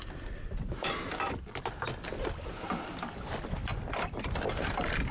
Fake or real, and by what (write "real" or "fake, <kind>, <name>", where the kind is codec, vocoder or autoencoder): real